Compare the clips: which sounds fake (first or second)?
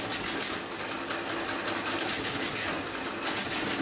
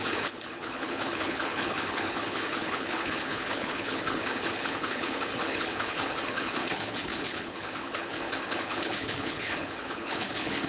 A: second